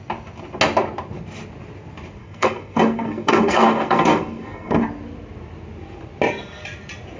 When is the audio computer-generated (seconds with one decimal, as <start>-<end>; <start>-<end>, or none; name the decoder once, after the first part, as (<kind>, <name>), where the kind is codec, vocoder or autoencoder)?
2.2-4.8 (codec, SNAC)